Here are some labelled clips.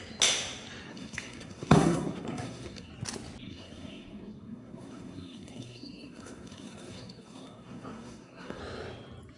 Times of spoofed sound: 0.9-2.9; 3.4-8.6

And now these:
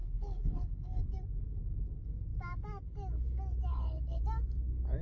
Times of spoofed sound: 0.0-1.0; 3.7-4.2

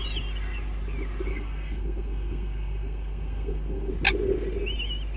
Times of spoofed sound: 1.3-3.9

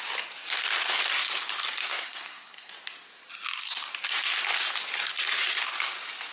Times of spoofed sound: 1.8-2.7

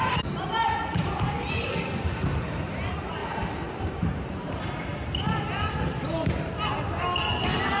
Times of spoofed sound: 0.0-4.9

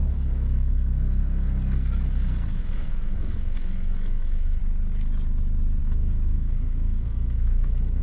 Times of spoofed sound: 0.0-4.6; 5.8-8.0

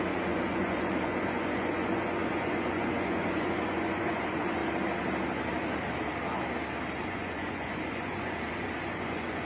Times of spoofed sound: 0.0-4.6; 7.0-9.4

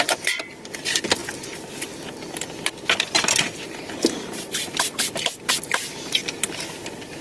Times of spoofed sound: 0.0-7.2